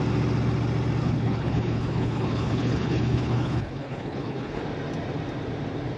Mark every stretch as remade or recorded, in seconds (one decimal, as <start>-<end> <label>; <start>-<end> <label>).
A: 0.0-1.0 recorded; 1.0-4.6 remade; 4.6-6.0 recorded